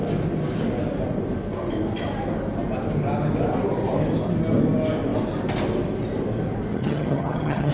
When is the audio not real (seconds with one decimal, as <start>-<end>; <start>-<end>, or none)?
6.7-7.7